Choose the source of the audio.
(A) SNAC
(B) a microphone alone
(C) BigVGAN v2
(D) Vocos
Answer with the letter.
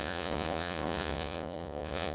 D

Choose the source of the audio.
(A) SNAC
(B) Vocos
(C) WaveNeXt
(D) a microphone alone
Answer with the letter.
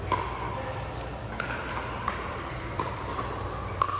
D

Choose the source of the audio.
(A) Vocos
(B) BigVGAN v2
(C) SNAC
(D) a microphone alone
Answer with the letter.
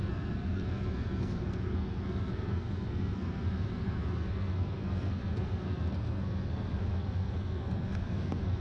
C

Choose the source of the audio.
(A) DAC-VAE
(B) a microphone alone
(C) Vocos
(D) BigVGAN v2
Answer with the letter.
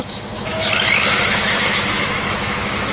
A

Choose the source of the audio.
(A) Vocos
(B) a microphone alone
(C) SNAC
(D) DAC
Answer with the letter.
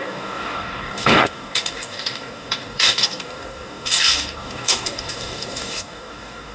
D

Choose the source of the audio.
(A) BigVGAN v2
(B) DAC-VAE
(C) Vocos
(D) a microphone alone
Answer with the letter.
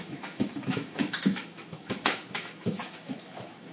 B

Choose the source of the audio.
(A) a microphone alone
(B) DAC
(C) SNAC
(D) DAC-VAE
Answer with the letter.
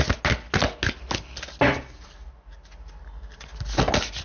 A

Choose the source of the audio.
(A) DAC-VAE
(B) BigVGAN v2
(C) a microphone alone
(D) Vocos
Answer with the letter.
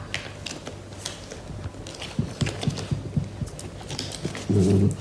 C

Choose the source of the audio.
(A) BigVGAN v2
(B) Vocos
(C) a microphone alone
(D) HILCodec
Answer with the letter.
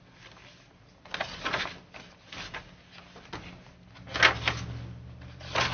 C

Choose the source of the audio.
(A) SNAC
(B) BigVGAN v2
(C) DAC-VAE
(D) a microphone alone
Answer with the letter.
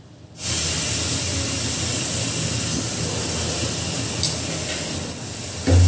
D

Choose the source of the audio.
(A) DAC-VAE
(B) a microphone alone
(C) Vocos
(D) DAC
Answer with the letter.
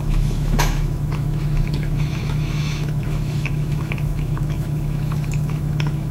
A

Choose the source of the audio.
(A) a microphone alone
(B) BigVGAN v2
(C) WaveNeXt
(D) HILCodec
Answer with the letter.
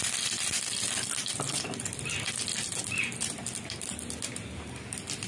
B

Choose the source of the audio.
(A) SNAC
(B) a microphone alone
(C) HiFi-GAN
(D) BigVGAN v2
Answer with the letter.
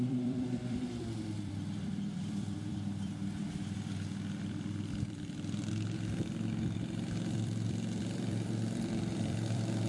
D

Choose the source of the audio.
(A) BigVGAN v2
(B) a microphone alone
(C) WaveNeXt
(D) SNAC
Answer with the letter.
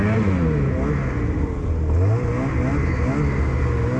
B